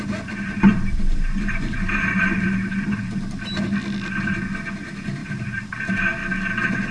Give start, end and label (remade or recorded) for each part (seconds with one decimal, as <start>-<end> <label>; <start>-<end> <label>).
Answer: 0.0-0.7 recorded; 0.7-3.0 remade; 3.0-5.2 recorded; 5.2-5.8 remade; 5.8-6.9 recorded